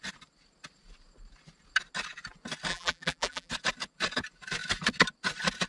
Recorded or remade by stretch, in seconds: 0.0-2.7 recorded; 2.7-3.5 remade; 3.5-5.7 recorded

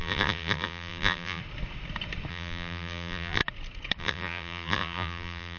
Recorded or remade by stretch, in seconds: 0.0-1.4 remade; 1.4-2.3 recorded; 2.3-3.4 remade; 3.4-4.0 recorded; 4.0-5.6 remade

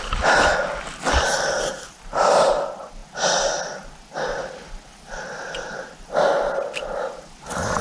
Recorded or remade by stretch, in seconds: 0.0-7.8 recorded

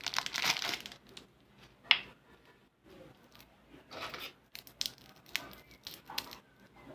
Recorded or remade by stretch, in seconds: 0.0-6.9 recorded

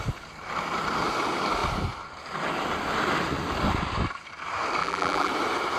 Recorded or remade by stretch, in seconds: 0.0-4.8 recorded; 4.8-5.3 remade; 5.3-5.8 recorded

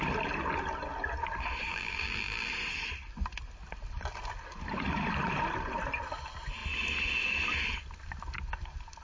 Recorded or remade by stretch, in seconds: 0.0-1.7 recorded; 1.7-2.5 remade; 2.5-9.0 recorded

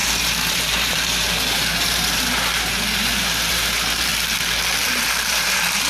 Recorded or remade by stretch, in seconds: 0.0-4.1 remade; 4.1-4.8 recorded; 4.8-5.9 remade

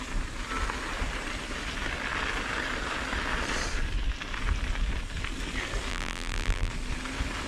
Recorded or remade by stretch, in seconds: 0.0-5.9 recorded; 5.9-6.7 remade; 6.7-7.5 recorded